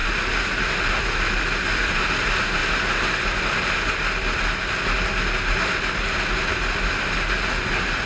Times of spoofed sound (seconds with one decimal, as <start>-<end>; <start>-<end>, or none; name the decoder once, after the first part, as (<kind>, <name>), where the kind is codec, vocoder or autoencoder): none